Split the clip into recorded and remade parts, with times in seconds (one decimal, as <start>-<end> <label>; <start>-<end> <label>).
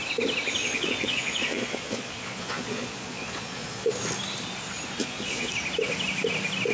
0.0-0.6 recorded; 0.6-3.9 remade; 3.9-5.0 recorded; 5.0-5.5 remade; 5.5-6.7 recorded